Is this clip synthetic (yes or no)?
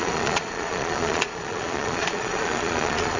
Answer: yes